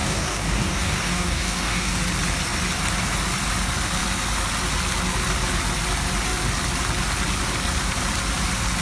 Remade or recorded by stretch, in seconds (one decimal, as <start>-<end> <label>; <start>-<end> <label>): 0.0-2.0 remade; 2.0-8.8 recorded